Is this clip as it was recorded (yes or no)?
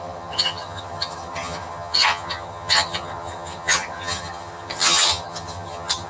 no